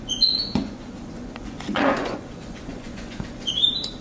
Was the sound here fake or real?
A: fake